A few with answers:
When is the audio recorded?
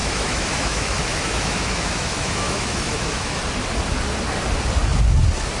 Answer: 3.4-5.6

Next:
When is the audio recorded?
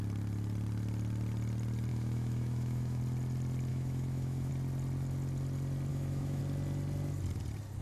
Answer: 0.0-1.9; 3.0-3.7; 4.5-5.9; 6.4-7.8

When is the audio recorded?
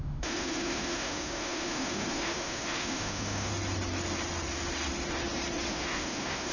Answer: 3.5-5.7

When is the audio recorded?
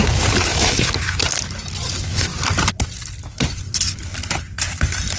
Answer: 0.0-0.5; 1.2-5.2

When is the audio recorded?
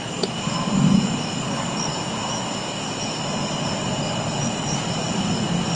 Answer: 0.0-1.9; 3.2-5.8